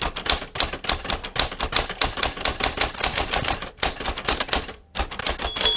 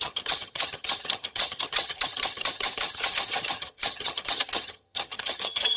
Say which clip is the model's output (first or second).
second